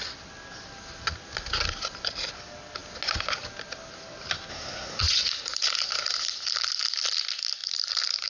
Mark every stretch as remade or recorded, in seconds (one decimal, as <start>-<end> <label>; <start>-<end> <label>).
0.0-4.5 recorded; 4.5-5.0 remade; 5.0-8.3 recorded